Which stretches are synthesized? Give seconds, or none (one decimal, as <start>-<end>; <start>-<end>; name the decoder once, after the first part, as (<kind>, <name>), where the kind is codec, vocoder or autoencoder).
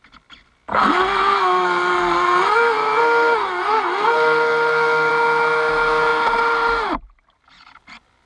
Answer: 0.7-5.1 (codec, SNAC)